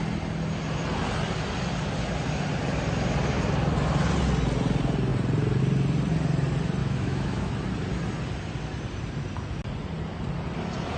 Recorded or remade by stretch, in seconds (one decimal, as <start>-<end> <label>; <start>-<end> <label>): 0.0-6.8 recorded; 6.8-7.5 remade; 7.5-11.0 recorded